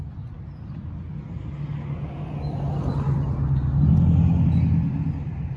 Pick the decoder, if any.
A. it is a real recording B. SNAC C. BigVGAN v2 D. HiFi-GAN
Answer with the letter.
A